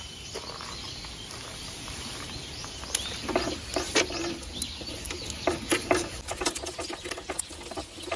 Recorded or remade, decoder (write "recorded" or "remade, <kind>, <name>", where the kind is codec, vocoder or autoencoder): recorded